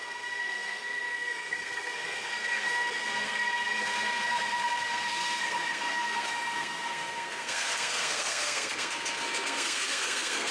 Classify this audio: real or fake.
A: fake